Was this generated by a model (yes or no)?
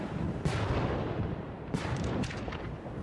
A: no